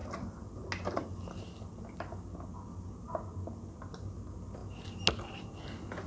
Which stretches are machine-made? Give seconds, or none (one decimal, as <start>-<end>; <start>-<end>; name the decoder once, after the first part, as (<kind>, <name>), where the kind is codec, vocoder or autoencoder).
none